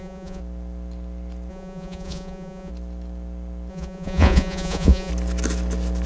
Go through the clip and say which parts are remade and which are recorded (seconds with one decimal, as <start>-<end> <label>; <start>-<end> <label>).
0.0-0.4 remade; 0.4-1.5 recorded; 1.5-2.7 remade; 2.7-3.7 recorded; 3.7-5.1 remade; 5.1-6.1 recorded